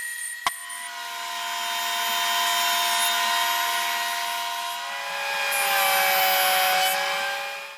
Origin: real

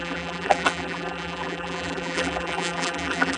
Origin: fake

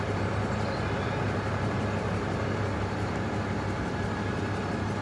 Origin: real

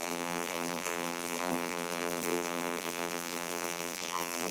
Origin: fake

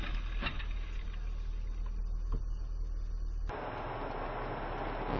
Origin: real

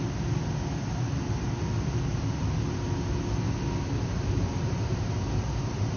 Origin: real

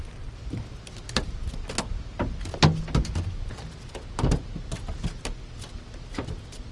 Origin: real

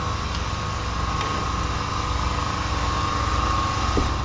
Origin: real